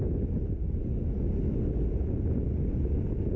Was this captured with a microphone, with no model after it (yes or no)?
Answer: yes